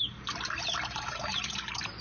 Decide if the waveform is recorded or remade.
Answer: remade